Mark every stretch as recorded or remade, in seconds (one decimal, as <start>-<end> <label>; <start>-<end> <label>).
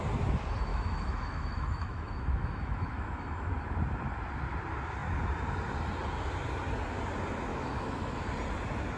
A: 0.0-0.7 recorded; 0.7-3.5 remade; 3.5-7.5 recorded; 7.5-8.3 remade; 8.3-9.0 recorded